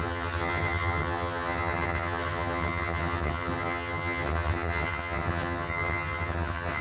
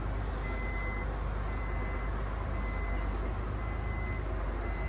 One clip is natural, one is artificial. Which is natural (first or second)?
second